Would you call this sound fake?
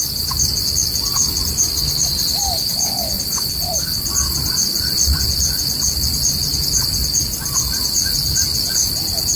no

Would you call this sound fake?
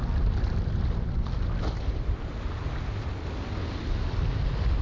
no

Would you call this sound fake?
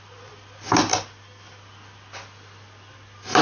no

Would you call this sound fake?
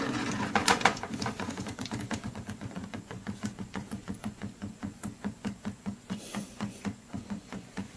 yes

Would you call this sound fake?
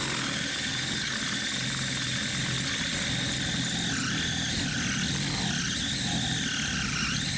no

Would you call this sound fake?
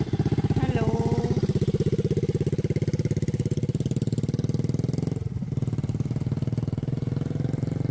no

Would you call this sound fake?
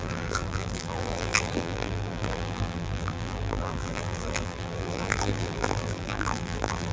yes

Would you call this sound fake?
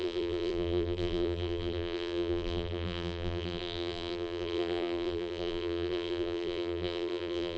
yes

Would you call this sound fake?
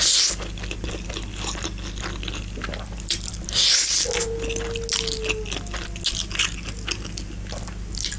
no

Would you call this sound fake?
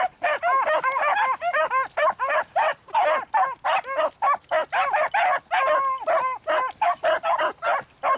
no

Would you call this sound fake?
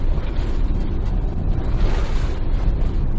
yes